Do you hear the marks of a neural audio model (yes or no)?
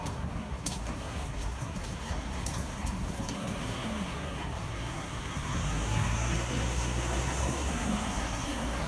yes